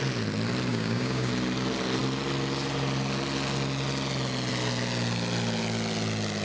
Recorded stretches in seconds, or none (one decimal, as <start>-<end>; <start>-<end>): 0.0-0.7; 1.3-6.4